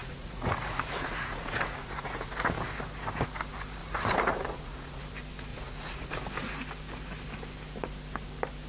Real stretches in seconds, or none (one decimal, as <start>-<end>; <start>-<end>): 2.3-3.8; 5.0-5.5; 6.2-8.7